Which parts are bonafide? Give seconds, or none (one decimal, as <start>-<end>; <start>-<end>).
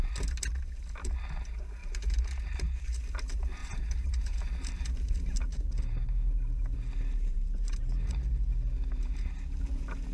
0.0-1.8; 3.0-3.6; 8.1-10.1